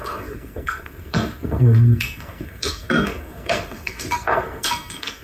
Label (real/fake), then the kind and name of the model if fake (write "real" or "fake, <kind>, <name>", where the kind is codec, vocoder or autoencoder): fake, codec, SNAC